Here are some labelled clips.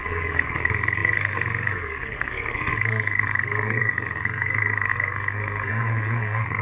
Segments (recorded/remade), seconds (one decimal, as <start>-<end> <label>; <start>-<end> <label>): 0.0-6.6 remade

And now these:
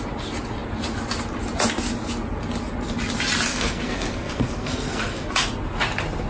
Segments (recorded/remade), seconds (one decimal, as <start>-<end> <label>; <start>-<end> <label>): 0.0-3.5 recorded; 3.5-5.3 remade; 5.3-6.3 recorded

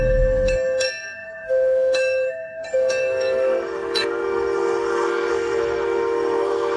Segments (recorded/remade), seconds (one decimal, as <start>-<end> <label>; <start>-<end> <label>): 0.0-6.8 remade

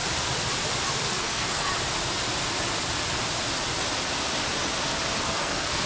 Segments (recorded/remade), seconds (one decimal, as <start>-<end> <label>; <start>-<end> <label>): 0.0-1.1 recorded; 1.1-1.7 remade; 1.7-5.2 recorded; 5.2-5.9 remade

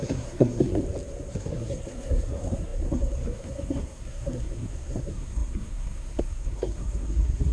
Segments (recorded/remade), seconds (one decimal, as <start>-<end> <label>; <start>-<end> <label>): 0.0-0.8 remade; 0.8-1.3 recorded; 1.3-7.5 remade